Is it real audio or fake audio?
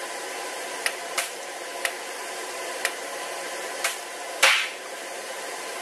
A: fake